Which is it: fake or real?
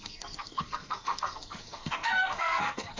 fake